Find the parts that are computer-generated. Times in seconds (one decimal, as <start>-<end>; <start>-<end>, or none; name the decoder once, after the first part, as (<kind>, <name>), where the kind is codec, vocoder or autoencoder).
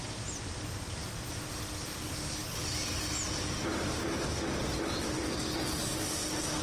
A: none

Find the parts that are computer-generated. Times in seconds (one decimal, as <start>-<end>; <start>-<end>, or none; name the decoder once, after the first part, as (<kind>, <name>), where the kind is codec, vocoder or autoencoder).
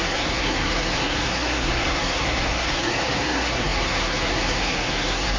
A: 0.0-5.4 (codec, SNAC)